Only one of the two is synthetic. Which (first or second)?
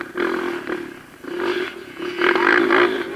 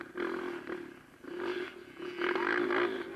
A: first